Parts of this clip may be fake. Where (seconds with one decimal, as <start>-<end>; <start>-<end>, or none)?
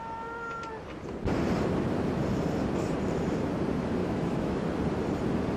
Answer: 4.0-4.6